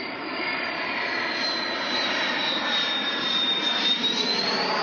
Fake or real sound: fake